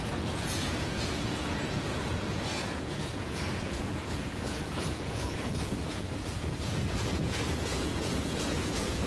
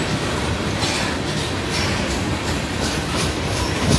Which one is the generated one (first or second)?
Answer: first